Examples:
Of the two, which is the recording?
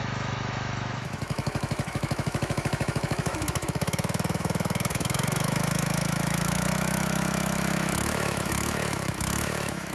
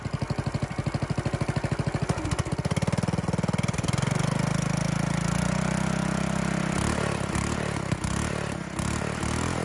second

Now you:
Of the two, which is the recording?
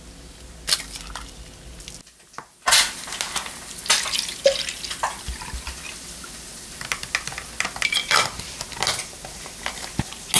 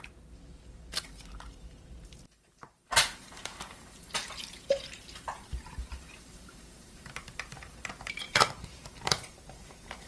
first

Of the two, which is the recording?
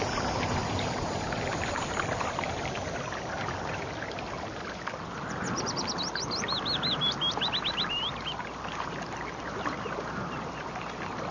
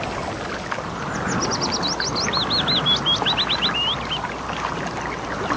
second